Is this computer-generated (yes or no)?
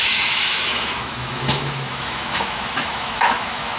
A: yes